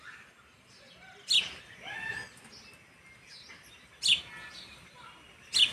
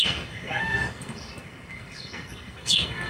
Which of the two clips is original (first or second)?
first